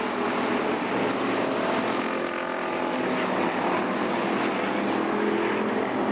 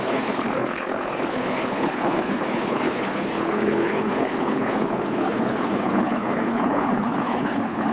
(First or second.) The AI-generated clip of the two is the second